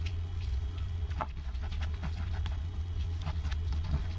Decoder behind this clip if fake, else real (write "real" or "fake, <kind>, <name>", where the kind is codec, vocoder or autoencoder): fake, vocoder, Vocos